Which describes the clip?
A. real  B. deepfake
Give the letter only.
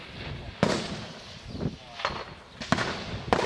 A